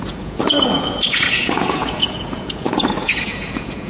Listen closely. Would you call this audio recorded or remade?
remade